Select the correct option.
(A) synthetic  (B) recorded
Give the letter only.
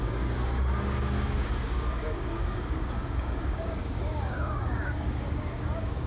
A